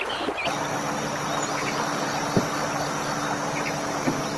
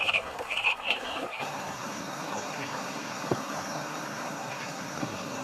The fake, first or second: second